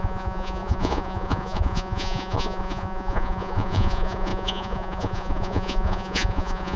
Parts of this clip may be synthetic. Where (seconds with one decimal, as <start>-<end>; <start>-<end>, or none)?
0.0-6.8